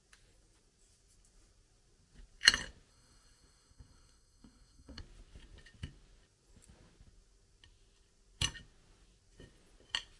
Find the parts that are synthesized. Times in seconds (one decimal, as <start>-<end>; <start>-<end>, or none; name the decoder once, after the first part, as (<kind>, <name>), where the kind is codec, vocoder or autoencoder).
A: 2.9-5.0 (codec, SNAC)